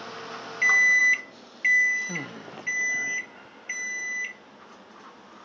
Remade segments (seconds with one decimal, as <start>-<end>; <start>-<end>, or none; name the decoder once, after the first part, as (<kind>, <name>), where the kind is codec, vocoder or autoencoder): none